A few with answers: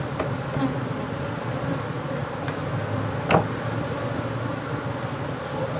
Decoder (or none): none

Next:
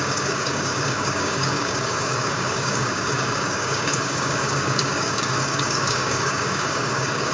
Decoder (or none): codec, DAC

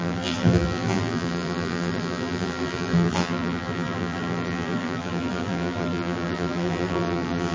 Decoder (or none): vocoder, BigVGAN v2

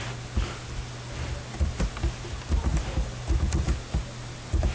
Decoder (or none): none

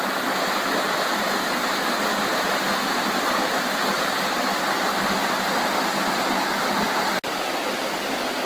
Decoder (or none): none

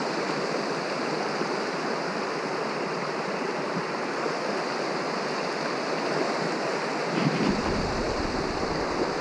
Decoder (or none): none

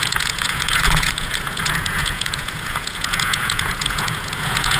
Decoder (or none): vocoder, Vocos